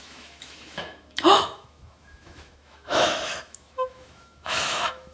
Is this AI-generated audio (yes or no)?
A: yes